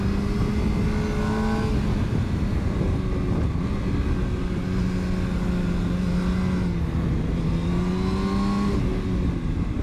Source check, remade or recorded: recorded